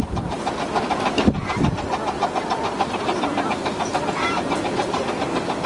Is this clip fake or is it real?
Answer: real